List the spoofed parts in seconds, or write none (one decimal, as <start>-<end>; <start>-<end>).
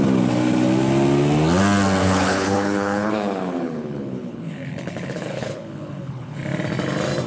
2.0-6.4